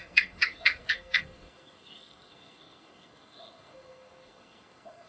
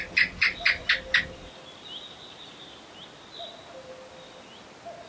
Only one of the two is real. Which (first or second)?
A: second